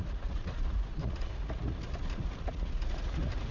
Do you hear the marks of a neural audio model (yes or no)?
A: yes